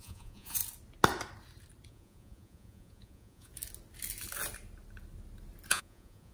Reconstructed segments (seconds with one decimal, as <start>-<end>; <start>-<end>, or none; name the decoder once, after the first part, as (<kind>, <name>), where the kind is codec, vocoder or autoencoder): 0.0-0.6 (vocoder, Vocos); 1.9-3.5; 5.7-6.3